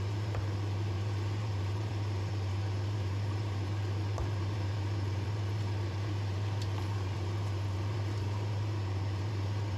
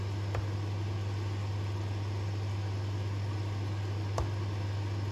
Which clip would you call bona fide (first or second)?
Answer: second